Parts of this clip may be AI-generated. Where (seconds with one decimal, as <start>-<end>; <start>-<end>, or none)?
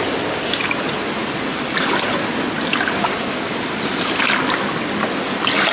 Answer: none